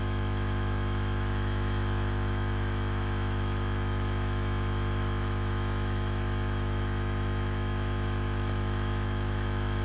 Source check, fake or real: fake